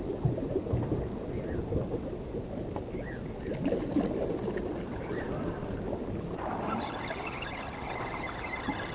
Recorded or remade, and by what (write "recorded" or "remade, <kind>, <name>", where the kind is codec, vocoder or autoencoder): recorded